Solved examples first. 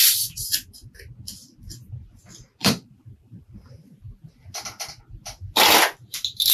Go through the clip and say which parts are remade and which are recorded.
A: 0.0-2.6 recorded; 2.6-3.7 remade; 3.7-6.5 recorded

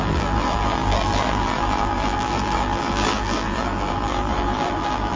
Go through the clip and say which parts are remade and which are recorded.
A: 0.0-5.2 remade